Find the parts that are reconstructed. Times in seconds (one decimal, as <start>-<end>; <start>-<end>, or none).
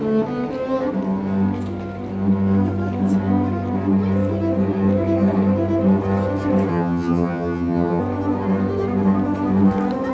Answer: 6.7-8.0